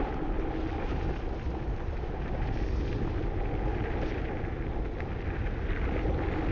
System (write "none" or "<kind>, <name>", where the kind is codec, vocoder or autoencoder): none